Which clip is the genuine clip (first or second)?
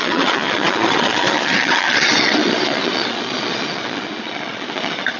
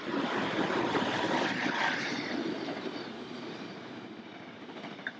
second